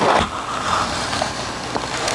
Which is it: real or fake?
real